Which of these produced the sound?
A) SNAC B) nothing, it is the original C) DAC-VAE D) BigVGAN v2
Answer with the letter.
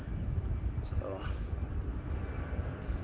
B